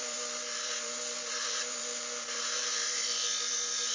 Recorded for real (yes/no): no